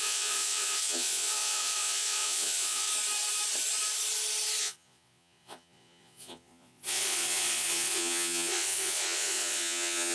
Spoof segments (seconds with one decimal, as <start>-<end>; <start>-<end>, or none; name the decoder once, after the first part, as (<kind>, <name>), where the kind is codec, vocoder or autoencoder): 0.0-2.9 (vocoder, Vocos); 4.6-10.1